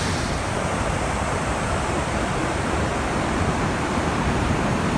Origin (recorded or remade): remade